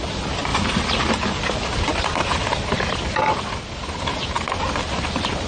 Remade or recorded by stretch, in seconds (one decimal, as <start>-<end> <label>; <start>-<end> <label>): 0.0-5.5 recorded